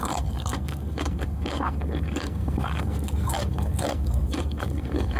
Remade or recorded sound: remade